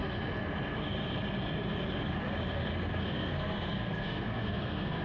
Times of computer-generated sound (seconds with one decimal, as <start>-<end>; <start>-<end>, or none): 3.0-5.0